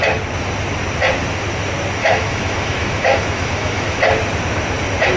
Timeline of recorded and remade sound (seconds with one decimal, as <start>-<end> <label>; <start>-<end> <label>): 0.0-2.0 recorded; 2.0-4.0 remade; 4.0-5.2 recorded